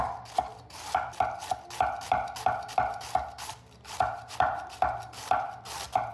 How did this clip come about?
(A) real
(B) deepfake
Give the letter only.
A